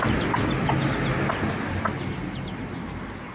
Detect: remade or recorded recorded